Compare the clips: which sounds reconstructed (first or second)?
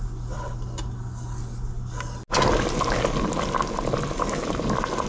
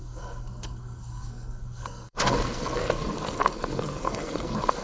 second